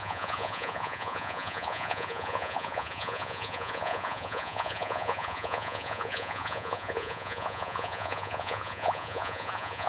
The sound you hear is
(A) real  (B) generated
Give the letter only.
B